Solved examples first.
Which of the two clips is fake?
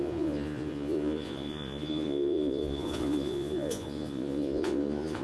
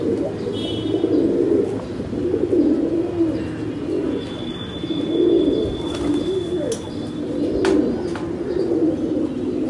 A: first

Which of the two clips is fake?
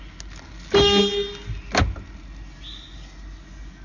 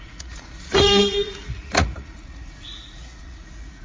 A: second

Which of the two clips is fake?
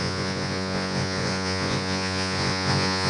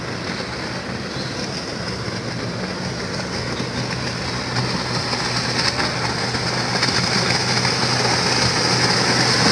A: first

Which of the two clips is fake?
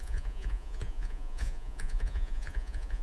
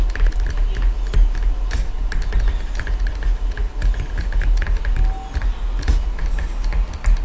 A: first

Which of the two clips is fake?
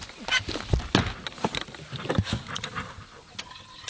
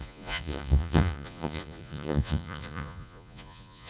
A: second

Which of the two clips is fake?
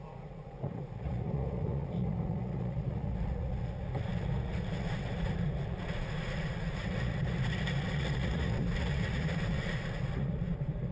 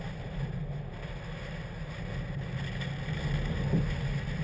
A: first